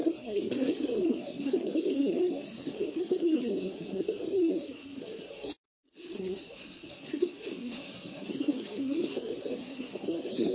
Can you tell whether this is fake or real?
fake